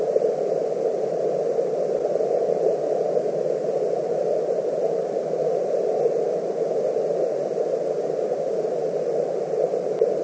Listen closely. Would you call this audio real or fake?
real